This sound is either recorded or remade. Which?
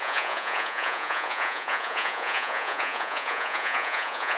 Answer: remade